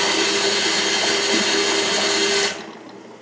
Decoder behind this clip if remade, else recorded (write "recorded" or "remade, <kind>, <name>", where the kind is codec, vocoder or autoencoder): recorded